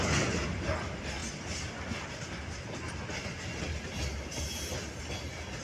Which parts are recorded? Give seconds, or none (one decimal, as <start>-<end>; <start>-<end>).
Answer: 0.0-5.6